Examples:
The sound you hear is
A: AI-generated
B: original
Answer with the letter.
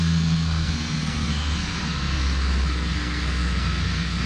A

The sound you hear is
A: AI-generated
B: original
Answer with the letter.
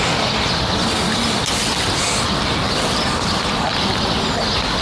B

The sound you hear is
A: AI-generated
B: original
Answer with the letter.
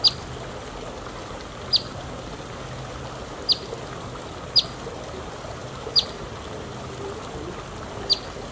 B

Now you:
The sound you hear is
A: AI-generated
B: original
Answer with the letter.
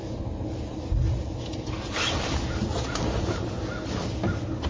B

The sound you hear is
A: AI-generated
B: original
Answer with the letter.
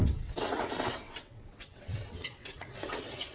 A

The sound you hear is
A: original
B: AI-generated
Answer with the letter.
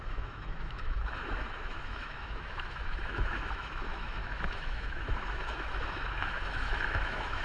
B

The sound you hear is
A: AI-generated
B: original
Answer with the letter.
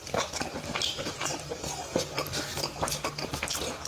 B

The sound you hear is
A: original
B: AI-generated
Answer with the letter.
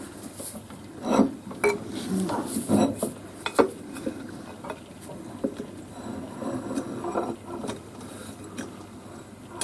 A